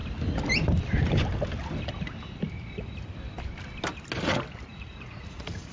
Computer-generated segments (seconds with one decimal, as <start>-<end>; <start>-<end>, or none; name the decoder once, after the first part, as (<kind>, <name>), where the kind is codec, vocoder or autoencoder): 4.7-5.7 (vocoder, Vocos)